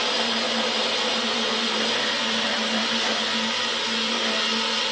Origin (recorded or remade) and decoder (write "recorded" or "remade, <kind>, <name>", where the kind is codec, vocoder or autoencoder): recorded